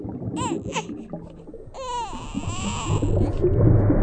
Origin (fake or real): real